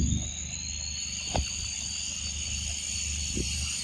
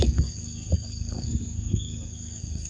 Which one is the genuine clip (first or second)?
first